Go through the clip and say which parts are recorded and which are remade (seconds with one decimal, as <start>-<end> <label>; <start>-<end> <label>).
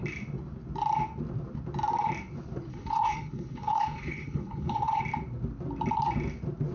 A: 0.0-2.7 recorded; 2.7-5.0 remade; 5.0-6.7 recorded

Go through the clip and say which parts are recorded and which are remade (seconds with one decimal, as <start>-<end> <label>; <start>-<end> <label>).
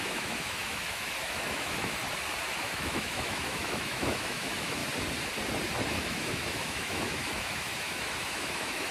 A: 0.0-2.0 remade; 2.0-2.6 recorded; 2.6-4.8 remade; 4.8-5.9 recorded; 5.9-8.9 remade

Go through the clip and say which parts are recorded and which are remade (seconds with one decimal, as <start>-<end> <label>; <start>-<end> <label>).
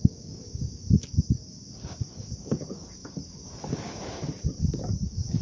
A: 0.0-4.2 remade; 4.2-4.9 recorded; 4.9-5.4 remade